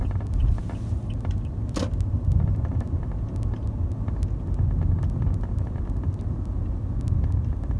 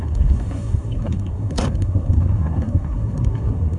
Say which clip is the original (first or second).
first